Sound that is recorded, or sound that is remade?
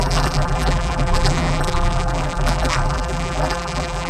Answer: remade